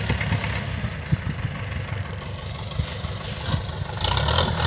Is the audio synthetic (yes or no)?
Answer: no